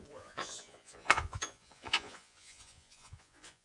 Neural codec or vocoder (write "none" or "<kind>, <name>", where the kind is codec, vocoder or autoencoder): vocoder, Vocos